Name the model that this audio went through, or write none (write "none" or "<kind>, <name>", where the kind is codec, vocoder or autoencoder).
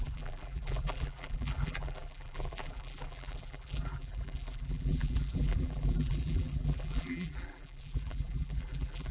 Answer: vocoder, BigVGAN v2